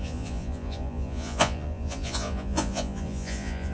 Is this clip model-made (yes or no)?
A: yes